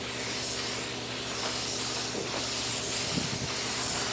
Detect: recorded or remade recorded